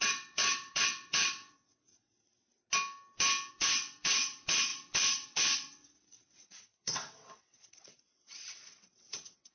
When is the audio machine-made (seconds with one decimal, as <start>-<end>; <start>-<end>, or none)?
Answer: 0.0-1.9; 3.5-9.5